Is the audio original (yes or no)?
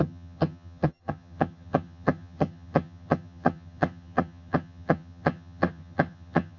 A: no